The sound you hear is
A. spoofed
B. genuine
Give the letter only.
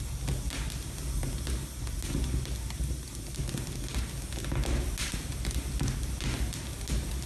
B